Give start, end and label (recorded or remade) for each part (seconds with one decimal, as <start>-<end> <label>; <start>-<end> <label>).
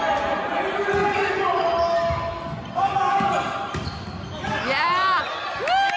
0.0-6.0 recorded